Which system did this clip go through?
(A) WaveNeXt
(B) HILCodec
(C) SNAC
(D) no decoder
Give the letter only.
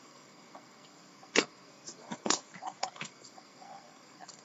C